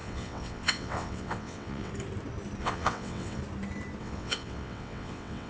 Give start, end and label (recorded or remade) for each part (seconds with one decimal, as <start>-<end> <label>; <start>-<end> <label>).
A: 0.0-1.9 remade; 1.9-2.6 recorded; 2.6-3.4 remade; 3.4-4.0 recorded; 4.0-5.5 remade